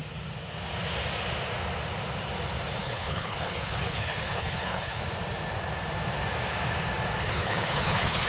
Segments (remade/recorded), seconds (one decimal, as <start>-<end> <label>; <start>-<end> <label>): 0.0-2.8 recorded; 2.8-5.0 remade; 5.0-7.2 recorded; 7.2-8.3 remade